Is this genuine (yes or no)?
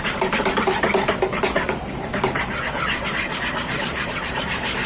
no